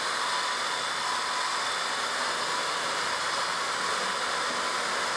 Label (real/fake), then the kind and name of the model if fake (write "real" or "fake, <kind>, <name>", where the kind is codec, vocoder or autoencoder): real